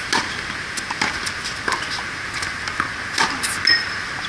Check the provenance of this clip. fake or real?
real